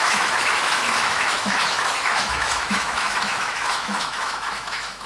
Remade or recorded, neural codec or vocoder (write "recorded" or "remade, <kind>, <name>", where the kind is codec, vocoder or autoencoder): remade, autoencoder, DAC-VAE